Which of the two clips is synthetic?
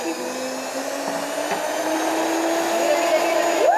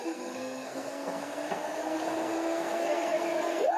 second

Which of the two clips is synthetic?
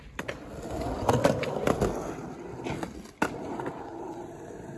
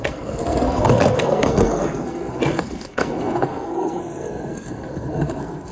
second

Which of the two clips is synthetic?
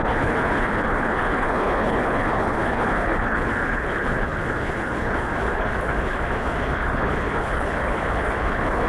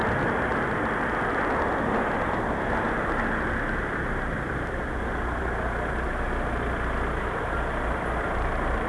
first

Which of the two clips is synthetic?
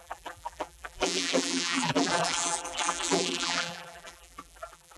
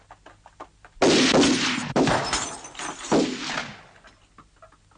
first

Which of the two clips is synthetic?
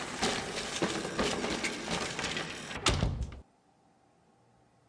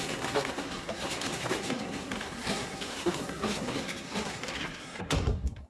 second